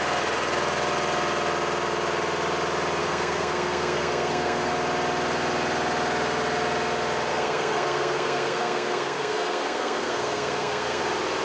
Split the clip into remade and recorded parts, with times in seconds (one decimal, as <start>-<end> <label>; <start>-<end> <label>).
0.0-3.0 recorded; 3.0-4.7 remade; 4.7-7.3 recorded; 7.3-11.0 remade; 11.0-11.4 recorded

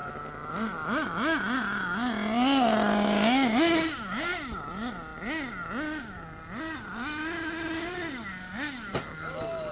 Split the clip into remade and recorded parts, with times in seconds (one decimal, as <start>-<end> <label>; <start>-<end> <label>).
0.0-9.7 recorded